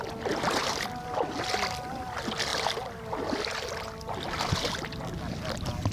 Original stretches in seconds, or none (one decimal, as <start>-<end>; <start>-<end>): 0.0-5.9